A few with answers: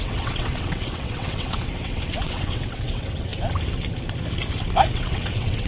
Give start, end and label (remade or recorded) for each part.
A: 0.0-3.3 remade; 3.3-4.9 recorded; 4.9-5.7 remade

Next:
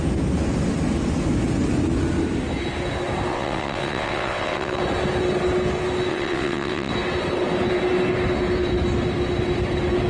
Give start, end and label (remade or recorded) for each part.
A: 0.0-3.3 recorded; 3.3-4.8 remade; 4.8-6.1 recorded; 6.1-6.9 remade; 6.9-10.1 recorded

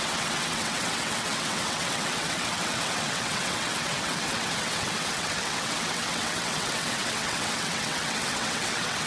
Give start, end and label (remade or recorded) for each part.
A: 0.0-9.1 remade

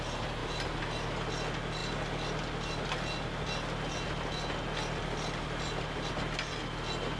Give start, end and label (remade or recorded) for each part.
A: 0.0-7.2 recorded

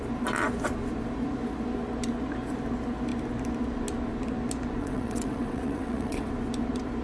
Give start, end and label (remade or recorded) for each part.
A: 0.0-4.8 recorded; 4.8-6.3 remade; 6.3-7.0 recorded

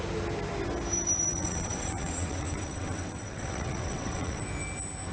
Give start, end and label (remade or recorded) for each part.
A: 0.0-1.3 recorded; 1.3-4.4 remade; 4.4-5.1 recorded